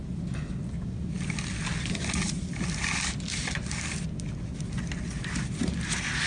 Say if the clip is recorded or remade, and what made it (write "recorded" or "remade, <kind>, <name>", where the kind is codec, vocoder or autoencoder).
recorded